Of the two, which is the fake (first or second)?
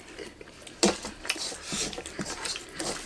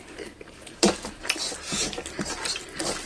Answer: first